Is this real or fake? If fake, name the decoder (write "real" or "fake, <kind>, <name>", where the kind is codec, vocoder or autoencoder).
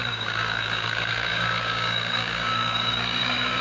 fake, codec, DAC